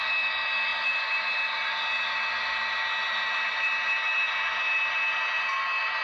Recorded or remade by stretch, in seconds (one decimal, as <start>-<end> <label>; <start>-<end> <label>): 0.0-6.0 recorded